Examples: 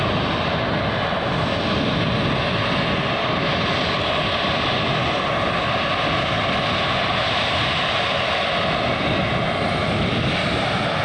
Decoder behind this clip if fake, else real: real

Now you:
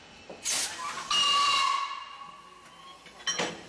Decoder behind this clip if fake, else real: real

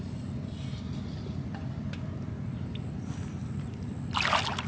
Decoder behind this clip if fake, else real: real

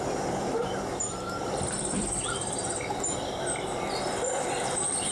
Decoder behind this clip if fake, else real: fake, vocoder, BigVGAN v2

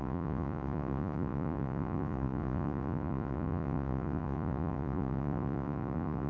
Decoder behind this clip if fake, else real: fake, vocoder, Vocos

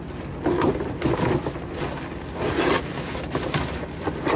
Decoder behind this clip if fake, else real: real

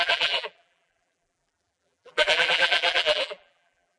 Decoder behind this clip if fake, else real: fake, vocoder, BigVGAN v2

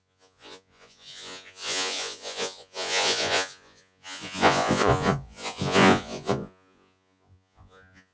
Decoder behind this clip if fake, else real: fake, vocoder, Vocos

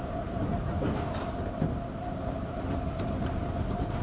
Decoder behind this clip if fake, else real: fake, vocoder, BigVGAN v2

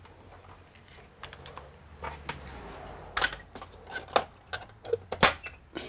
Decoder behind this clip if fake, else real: real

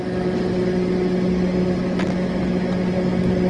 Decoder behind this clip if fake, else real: real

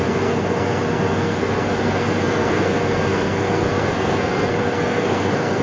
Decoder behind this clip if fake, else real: fake, codec, SNAC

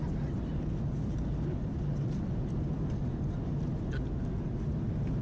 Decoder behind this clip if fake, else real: real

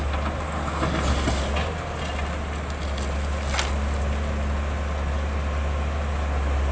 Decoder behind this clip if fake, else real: real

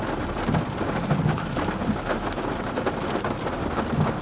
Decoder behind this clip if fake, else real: real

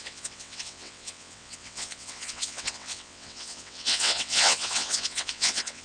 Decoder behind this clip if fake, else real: fake, vocoder, WaveNeXt